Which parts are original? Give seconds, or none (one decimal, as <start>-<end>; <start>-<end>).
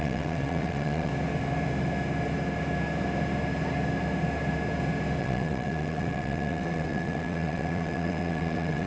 1.1-5.2